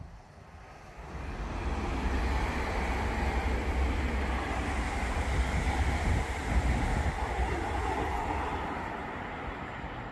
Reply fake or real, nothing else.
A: real